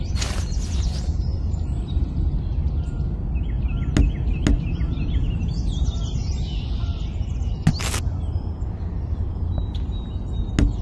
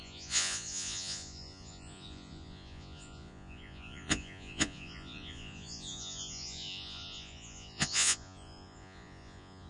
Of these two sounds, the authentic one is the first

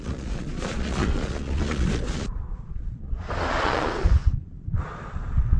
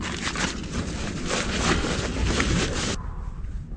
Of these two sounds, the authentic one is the second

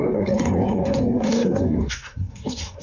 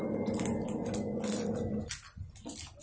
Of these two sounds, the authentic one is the second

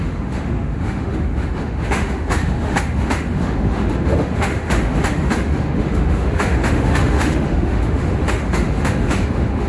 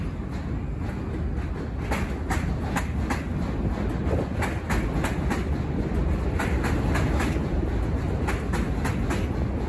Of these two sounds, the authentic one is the second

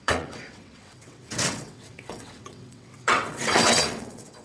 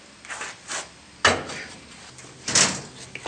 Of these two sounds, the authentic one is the second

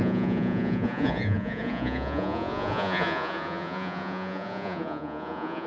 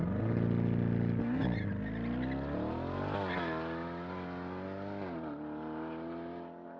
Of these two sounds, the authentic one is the second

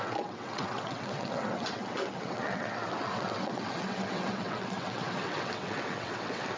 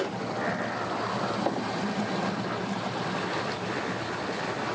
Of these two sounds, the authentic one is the second